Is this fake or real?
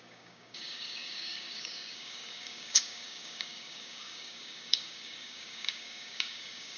fake